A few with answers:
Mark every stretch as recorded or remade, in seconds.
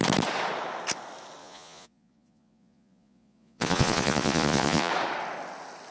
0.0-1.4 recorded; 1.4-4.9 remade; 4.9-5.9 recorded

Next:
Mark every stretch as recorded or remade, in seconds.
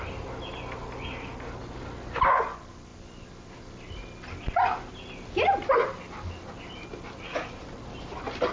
0.0-8.5 recorded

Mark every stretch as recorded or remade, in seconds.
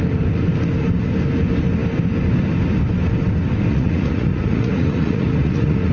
0.0-3.7 recorded; 3.7-5.9 remade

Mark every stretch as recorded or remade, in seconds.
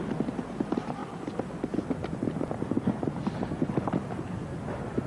0.0-5.1 recorded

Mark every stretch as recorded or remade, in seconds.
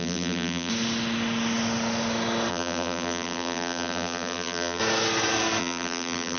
0.0-0.7 remade; 0.7-2.5 recorded; 2.5-4.8 remade; 4.8-5.6 recorded; 5.6-6.4 remade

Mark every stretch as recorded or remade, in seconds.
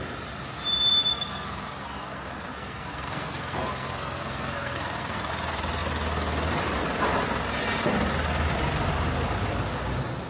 0.0-1.1 recorded; 1.1-5.3 remade; 5.3-10.3 recorded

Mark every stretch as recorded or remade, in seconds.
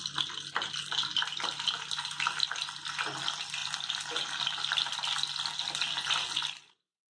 0.0-7.1 recorded